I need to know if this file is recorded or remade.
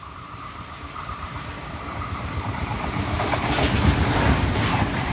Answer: remade